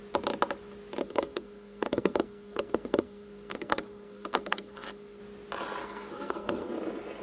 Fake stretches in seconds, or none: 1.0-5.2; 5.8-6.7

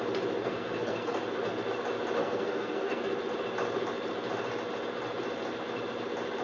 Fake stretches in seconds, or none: 0.4-1.2; 2.2-3.1